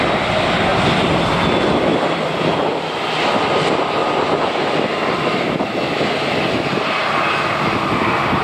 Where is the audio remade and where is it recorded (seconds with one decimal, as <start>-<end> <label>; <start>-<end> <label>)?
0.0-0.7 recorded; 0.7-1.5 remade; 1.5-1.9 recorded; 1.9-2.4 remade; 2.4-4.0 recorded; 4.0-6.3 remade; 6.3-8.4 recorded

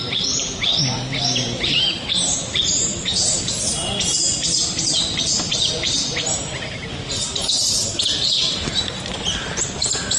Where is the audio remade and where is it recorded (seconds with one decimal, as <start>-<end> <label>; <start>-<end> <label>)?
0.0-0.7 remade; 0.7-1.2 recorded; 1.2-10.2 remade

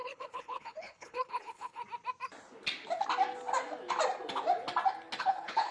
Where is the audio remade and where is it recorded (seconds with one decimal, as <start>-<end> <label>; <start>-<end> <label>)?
0.0-1.8 remade; 1.8-5.2 recorded; 5.2-5.7 remade

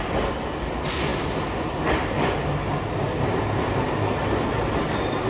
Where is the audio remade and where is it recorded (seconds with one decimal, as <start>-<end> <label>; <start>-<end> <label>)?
0.0-5.3 recorded

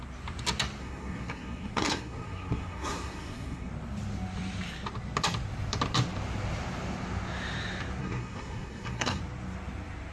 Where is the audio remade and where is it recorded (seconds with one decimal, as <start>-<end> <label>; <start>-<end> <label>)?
0.0-0.8 recorded; 0.8-3.7 remade; 3.7-8.0 recorded; 8.0-9.2 remade; 9.2-10.1 recorded